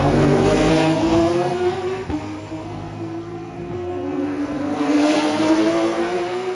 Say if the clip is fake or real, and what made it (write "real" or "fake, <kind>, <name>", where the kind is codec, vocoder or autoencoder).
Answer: fake, codec, SNAC